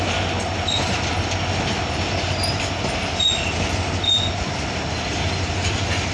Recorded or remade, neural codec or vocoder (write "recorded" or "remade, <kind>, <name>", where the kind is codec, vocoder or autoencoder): recorded